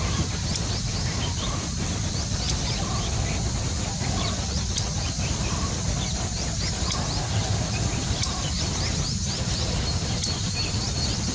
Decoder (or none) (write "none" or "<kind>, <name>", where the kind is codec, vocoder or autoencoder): vocoder, BigVGAN v2